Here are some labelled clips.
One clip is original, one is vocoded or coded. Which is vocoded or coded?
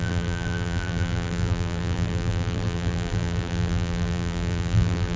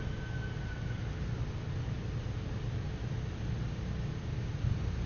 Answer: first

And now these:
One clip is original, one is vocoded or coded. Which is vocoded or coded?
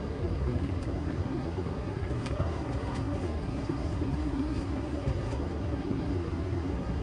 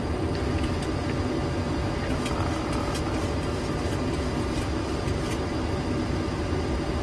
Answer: first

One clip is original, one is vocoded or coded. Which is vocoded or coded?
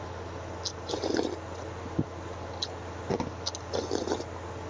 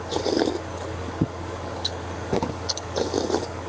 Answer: second